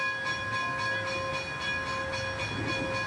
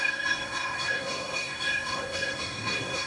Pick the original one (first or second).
first